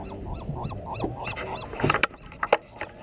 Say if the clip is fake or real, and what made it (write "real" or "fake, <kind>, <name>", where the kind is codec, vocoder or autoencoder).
real